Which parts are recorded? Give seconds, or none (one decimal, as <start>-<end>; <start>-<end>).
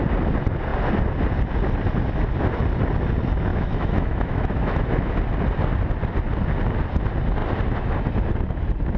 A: 0.0-3.5; 5.2-9.0